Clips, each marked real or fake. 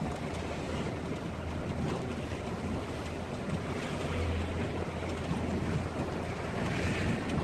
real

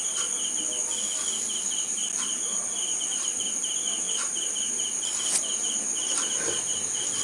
real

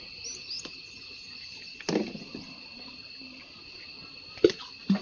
real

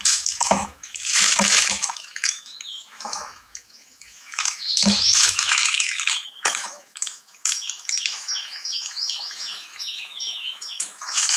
fake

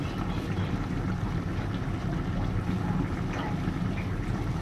real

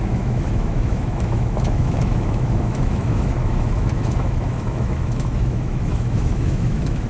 fake